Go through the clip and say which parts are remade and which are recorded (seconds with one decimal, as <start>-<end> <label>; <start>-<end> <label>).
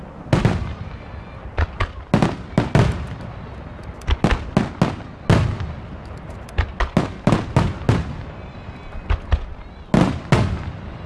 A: 0.0-11.1 recorded